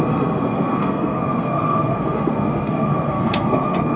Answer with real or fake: fake